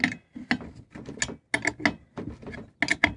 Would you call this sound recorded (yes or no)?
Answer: yes